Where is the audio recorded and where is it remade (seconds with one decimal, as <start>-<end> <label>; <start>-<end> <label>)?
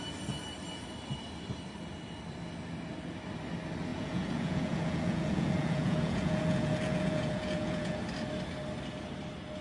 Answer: 0.0-3.9 recorded; 3.9-8.0 remade; 8.0-9.6 recorded